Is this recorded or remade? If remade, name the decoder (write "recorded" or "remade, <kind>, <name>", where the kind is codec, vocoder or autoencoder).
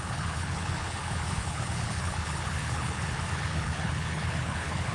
remade, codec, HILCodec